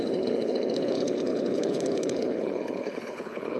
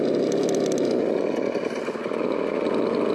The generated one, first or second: first